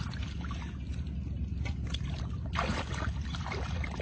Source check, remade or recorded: recorded